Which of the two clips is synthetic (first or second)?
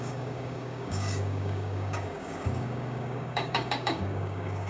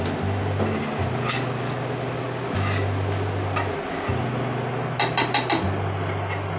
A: first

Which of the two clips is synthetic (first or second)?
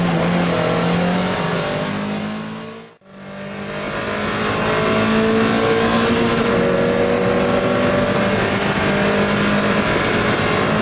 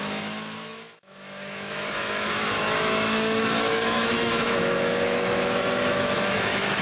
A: second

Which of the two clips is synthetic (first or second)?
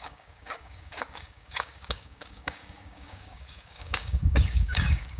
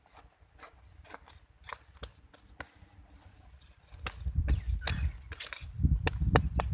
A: first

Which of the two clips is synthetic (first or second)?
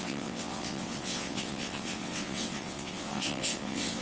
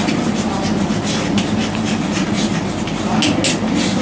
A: first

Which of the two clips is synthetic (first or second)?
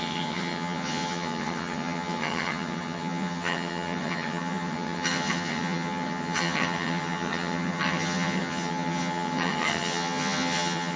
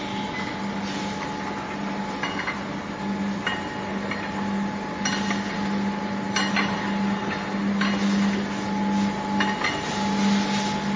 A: first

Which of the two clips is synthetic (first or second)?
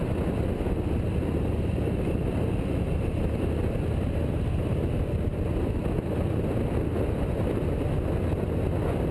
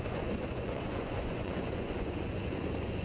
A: second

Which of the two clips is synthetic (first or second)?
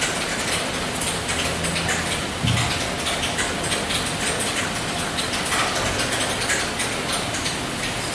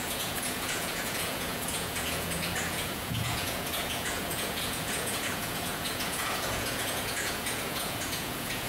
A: second